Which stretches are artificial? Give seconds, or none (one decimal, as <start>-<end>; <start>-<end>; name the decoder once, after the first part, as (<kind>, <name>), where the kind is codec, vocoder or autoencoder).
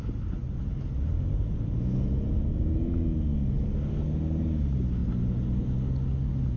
none